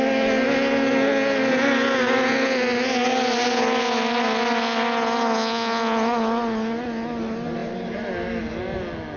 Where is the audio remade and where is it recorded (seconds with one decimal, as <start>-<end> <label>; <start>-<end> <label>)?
0.0-9.2 recorded